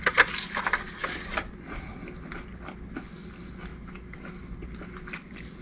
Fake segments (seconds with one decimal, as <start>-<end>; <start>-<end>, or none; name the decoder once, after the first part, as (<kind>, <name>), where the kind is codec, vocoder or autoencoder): 3.7-4.4 (autoencoder, DAC-VAE)